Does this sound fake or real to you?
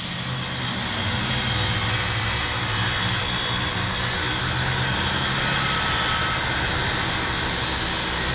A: real